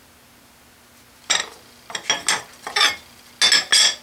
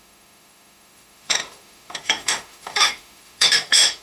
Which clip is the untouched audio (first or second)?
first